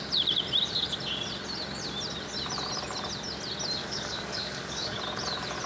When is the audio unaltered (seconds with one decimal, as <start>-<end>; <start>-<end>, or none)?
0.0-3.8; 5.0-5.7